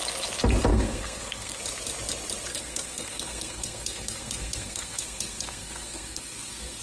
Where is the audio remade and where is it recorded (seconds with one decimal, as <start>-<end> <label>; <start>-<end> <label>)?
0.0-0.7 recorded; 0.7-1.6 remade; 1.6-2.5 recorded; 2.5-6.8 remade